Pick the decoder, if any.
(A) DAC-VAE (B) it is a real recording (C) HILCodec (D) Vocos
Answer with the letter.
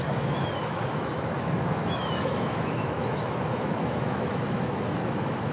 A